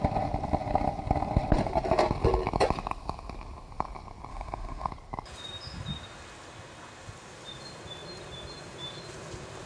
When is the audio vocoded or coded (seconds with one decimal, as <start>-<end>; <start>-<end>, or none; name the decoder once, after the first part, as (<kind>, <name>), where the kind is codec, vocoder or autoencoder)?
4.3-4.9 (autoencoder, DAC-VAE)